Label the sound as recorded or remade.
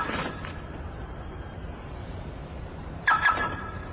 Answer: remade